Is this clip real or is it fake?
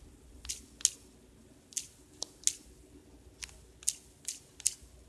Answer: real